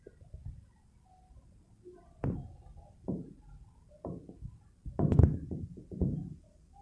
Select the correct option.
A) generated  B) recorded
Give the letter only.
B